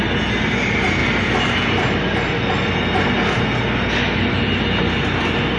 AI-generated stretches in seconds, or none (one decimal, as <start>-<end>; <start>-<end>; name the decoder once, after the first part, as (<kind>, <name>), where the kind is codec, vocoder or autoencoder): none